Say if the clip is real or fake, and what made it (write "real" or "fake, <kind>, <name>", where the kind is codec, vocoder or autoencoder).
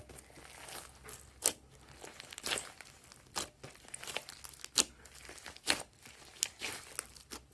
real